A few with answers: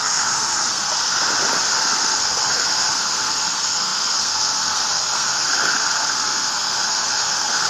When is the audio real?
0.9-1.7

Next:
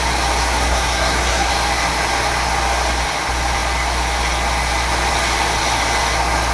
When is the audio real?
0.0-0.4; 1.5-6.5

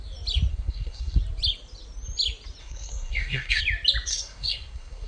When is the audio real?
0.0-0.5; 1.2-2.6; 3.6-4.1

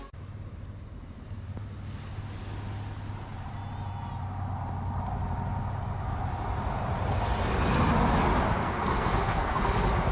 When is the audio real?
0.0-8.6; 9.7-10.1

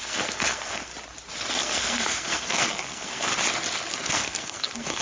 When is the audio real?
0.9-1.5; 3.3-3.9